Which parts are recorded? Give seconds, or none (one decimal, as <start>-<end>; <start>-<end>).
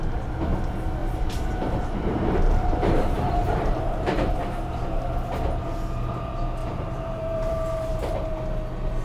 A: 0.0-1.0; 5.0-6.6; 8.3-9.0